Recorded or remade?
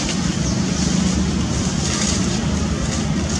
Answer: recorded